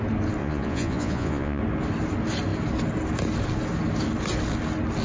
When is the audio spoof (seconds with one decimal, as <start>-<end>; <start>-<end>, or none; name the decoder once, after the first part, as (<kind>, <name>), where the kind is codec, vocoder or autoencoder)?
0.4-1.6 (vocoder, Vocos)